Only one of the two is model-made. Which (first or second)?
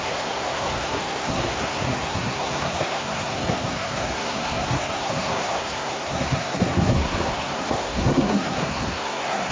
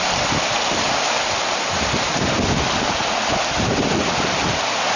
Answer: first